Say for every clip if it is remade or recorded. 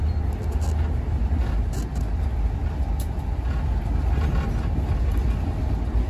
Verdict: recorded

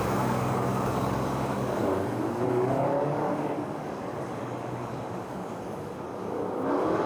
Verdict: remade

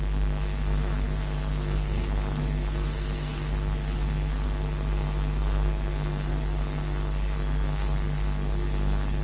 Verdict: remade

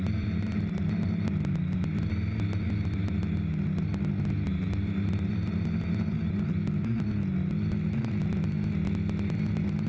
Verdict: recorded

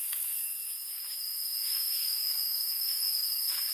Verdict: remade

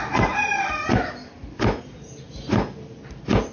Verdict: recorded